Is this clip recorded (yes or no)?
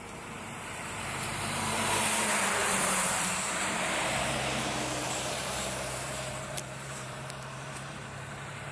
no